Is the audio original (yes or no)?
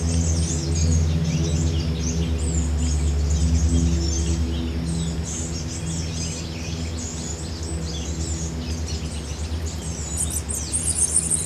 yes